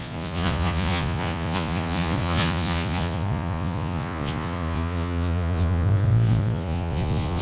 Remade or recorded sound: remade